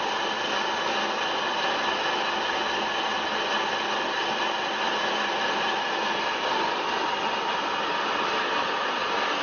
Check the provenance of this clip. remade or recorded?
recorded